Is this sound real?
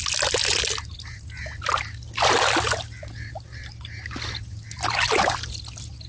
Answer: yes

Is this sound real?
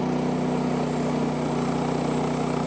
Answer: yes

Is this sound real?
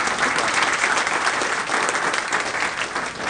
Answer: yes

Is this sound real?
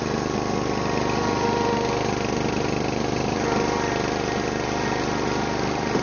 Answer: yes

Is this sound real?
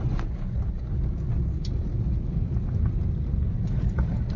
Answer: yes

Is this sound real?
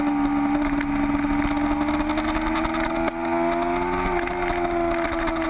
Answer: yes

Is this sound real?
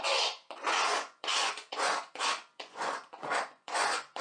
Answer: no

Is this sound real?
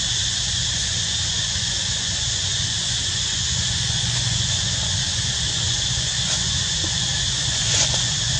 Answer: no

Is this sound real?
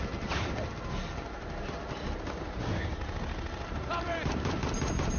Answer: yes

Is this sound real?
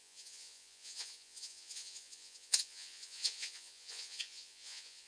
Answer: no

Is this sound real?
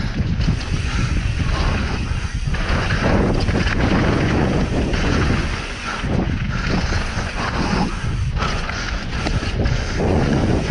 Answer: no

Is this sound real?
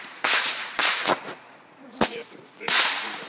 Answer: no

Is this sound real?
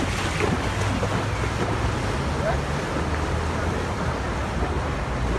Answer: yes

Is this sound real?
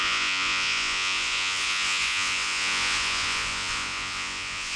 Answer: no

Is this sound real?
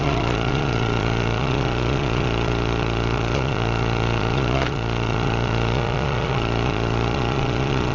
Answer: no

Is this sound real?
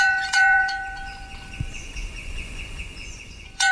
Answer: no